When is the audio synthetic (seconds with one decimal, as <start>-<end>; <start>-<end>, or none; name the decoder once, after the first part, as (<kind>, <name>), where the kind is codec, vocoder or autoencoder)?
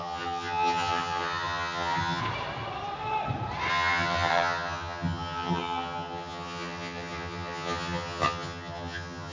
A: 0.0-2.2 (vocoder, HiFi-GAN); 3.7-9.3